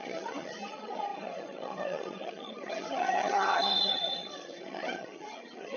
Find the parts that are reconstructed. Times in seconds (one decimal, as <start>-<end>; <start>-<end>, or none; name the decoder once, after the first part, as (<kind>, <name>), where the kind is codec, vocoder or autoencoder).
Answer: 0.0-5.8 (vocoder, HiFi-GAN)